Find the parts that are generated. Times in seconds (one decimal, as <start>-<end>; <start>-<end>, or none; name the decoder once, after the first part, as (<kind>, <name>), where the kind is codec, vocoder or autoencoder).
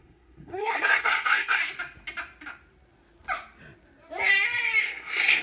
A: 0.0-1.6 (codec, SNAC); 4.8-5.4